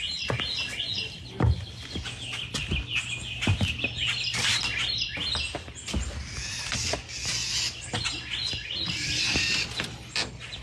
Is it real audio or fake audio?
real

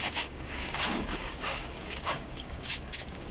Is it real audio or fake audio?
fake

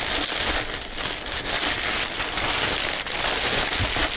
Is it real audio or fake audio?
real